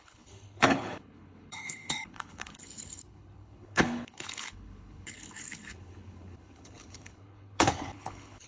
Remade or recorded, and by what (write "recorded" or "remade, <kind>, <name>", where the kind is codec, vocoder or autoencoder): remade, codec, HILCodec